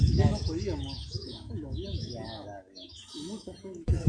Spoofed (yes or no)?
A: yes